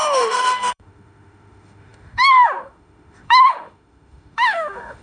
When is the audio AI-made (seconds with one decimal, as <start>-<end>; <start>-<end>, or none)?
0.0-5.0